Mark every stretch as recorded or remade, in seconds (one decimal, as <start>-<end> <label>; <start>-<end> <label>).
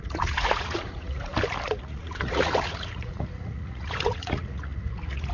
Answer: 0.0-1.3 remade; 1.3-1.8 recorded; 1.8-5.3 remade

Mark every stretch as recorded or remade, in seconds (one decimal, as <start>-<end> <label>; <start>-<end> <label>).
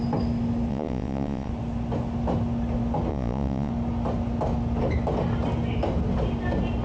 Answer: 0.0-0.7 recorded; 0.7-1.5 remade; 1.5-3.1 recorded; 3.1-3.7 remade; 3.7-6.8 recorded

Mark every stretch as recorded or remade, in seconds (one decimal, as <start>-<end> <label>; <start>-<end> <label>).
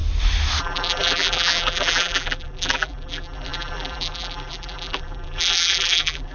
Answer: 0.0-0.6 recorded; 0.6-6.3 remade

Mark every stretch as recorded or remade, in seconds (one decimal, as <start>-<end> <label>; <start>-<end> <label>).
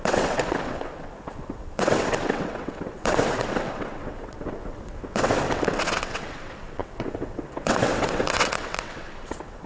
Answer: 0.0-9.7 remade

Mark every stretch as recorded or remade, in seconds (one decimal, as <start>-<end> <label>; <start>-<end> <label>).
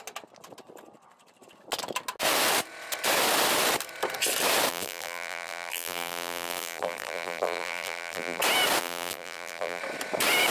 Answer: 0.0-4.7 recorded; 4.7-8.4 remade; 8.4-8.8 recorded; 8.8-9.8 remade; 9.8-10.5 recorded